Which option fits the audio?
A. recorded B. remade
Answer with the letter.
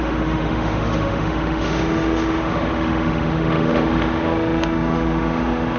B